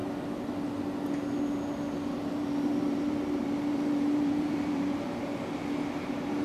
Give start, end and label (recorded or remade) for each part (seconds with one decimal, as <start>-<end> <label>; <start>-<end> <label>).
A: 0.0-2.3 recorded; 2.3-5.3 remade; 5.3-6.0 recorded; 6.0-6.4 remade